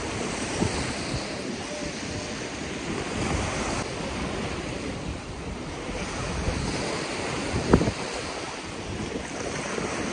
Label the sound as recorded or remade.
remade